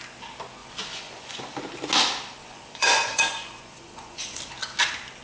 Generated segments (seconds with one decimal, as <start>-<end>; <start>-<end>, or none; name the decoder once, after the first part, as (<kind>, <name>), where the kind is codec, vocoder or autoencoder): 0.6-1.4 (vocoder, Vocos); 2.4-4.4